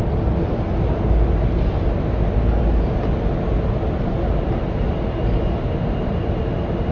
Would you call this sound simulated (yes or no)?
no